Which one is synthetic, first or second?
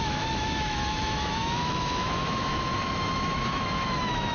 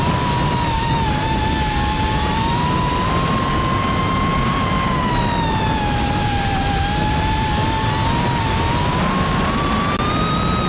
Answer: first